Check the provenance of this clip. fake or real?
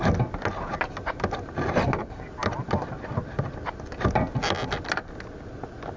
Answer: real